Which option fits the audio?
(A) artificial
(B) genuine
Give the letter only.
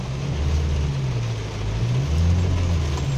B